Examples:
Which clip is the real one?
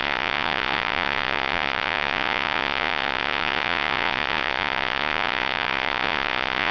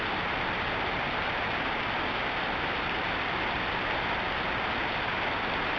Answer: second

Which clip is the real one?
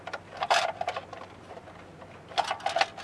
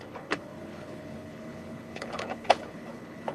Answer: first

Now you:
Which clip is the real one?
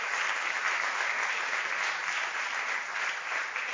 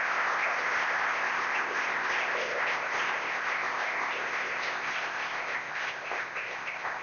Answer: first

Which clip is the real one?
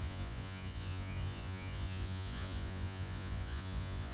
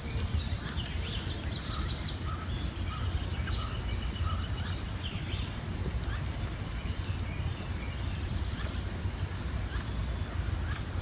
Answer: second